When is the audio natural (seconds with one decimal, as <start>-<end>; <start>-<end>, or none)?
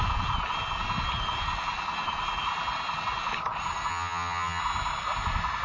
0.0-3.9; 4.6-5.6